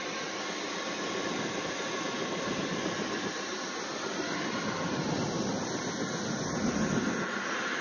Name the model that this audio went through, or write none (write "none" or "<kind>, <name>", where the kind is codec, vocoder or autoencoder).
none